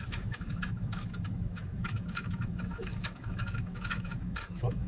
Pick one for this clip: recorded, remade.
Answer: remade